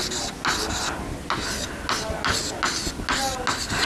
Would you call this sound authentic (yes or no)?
yes